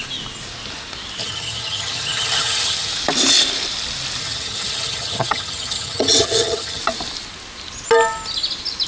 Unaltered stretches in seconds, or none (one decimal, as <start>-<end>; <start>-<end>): 0.0-1.2; 2.9-4.2; 6.8-8.9

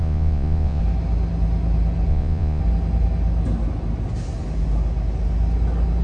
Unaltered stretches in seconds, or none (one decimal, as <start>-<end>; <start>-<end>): 0.8-2.1; 2.6-6.0

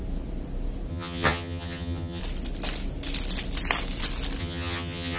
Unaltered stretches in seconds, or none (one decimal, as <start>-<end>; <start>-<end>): 0.0-0.9; 2.2-4.4

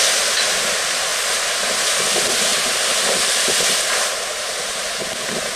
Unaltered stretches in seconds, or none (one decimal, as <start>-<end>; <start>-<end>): 0.0-2.5

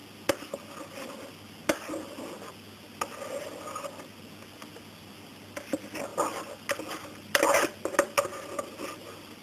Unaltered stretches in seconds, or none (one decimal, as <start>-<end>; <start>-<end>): 0.0-9.4